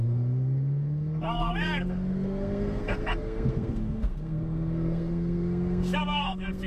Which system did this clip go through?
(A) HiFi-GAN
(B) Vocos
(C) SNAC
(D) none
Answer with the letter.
C